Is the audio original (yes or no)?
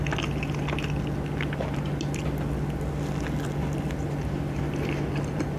yes